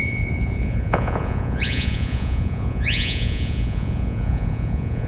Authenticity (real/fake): fake